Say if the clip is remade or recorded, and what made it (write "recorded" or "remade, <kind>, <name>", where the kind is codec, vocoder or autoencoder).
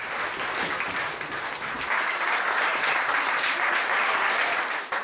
recorded